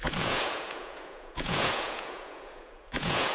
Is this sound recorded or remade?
remade